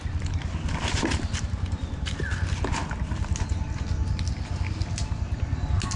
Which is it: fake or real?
real